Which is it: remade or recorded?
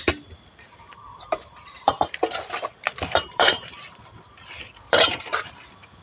remade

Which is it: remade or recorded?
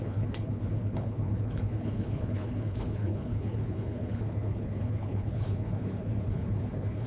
remade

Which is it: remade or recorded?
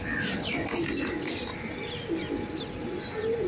recorded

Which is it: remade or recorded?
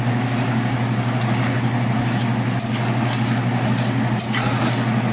recorded